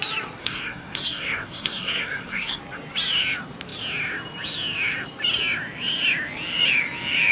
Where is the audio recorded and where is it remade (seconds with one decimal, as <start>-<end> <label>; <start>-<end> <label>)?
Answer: 0.0-0.4 recorded; 0.4-2.6 remade; 2.6-7.3 recorded